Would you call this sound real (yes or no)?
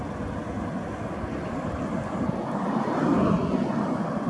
yes